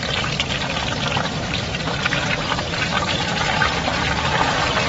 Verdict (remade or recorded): remade